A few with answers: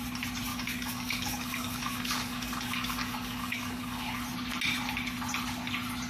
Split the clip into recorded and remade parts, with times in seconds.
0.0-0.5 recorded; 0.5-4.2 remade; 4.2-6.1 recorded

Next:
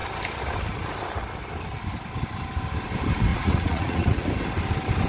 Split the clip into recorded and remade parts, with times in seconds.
0.0-3.3 recorded; 3.3-4.3 remade; 4.3-5.1 recorded

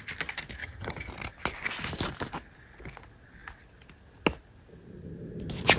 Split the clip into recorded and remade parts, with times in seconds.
0.0-0.6 recorded; 0.6-1.1 remade; 1.1-5.8 recorded